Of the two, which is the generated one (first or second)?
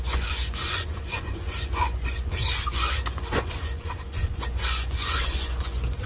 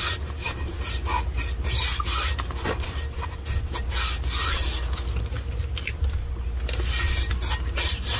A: first